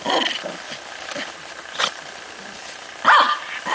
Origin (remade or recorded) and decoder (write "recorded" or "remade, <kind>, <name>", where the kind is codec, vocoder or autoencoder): recorded